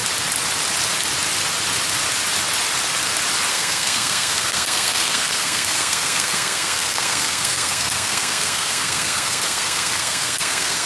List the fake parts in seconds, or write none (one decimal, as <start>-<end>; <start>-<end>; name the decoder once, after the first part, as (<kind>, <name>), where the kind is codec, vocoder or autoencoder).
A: 3.5-10.9 (codec, SNAC)